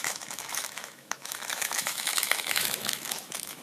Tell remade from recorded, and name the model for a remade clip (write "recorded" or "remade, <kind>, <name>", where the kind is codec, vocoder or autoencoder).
remade, autoencoder, DAC-VAE